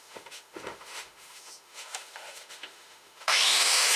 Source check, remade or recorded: remade